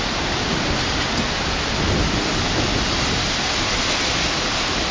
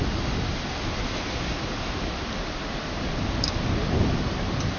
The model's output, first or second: first